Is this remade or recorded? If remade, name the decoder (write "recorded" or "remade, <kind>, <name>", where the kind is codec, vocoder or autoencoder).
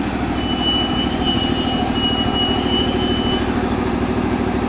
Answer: recorded